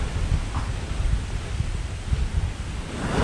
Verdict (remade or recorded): recorded